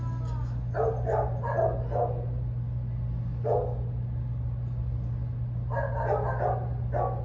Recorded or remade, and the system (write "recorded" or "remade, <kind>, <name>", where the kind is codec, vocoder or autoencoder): recorded